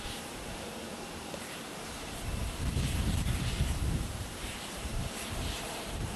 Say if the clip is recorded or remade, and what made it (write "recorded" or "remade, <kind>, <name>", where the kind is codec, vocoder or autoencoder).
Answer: remade, vocoder, BigVGAN v2